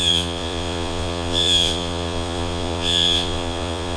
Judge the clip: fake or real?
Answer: fake